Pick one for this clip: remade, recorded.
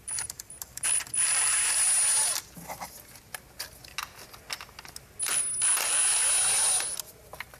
recorded